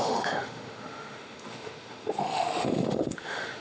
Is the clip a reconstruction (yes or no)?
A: yes